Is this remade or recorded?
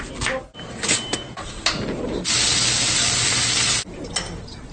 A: recorded